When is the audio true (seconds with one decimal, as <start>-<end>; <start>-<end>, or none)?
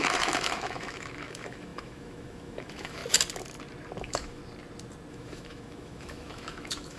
3.0-4.0; 4.4-5.1